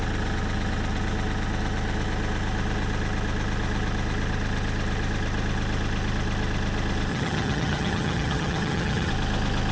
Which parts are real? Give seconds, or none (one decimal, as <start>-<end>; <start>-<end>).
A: 0.0-7.1; 9.1-9.7